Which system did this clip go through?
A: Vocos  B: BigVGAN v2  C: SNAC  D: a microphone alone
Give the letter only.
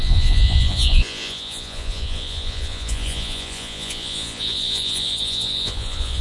A